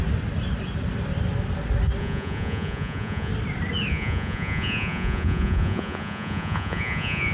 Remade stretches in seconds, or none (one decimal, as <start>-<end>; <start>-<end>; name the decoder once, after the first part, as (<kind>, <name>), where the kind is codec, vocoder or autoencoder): 2.0-3.3 (vocoder, Vocos); 3.9-7.3